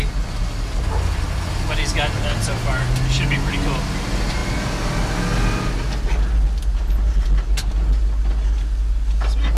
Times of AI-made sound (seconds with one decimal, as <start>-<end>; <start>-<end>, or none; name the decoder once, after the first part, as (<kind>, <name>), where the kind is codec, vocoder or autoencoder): none